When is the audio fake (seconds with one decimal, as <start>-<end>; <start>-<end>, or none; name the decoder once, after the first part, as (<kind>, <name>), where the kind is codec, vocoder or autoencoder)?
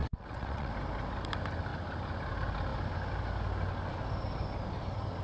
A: 0.0-0.7 (vocoder, WaveNeXt)